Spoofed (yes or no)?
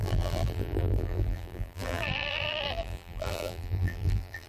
yes